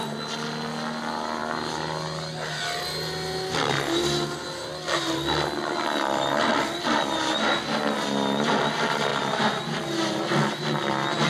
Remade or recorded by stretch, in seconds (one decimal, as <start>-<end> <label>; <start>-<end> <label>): 0.0-9.1 recorded; 9.1-9.8 remade; 9.8-11.3 recorded